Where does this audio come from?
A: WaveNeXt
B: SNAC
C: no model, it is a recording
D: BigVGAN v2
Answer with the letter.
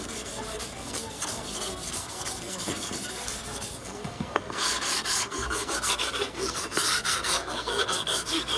B